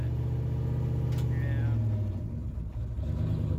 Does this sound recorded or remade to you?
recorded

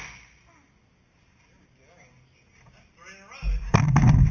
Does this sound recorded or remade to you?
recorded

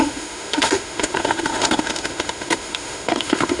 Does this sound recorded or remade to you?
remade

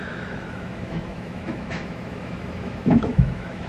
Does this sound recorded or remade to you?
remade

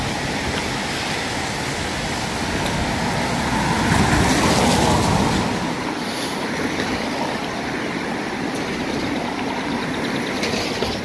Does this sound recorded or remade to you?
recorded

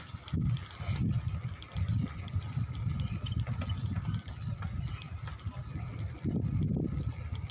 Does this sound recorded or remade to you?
recorded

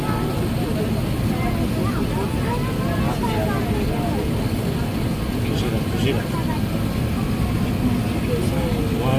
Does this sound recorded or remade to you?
recorded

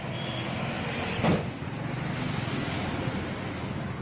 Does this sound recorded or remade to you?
recorded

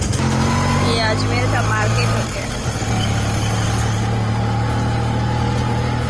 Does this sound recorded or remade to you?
recorded